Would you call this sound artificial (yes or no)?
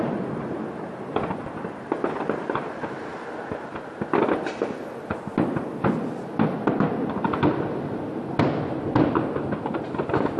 no